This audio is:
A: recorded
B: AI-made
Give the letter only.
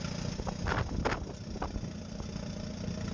A